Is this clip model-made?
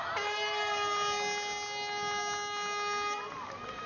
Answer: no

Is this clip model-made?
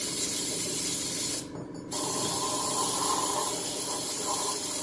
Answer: no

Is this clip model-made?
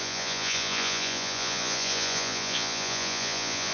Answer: yes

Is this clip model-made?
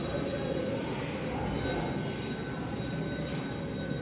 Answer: no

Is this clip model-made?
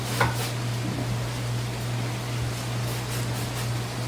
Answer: no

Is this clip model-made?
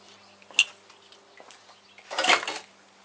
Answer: no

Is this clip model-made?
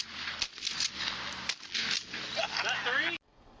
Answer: no